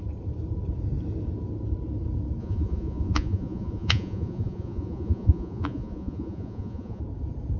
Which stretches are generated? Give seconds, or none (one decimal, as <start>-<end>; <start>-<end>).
2.4-7.0